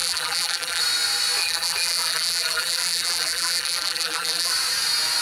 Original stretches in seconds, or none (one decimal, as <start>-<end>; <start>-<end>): 0.8-1.4; 4.5-5.2